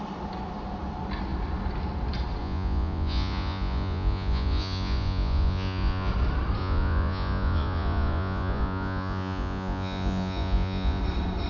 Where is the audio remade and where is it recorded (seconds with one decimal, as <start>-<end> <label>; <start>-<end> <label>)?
0.0-2.4 recorded; 2.4-6.1 remade; 6.1-6.6 recorded; 6.6-11.0 remade; 11.0-11.5 recorded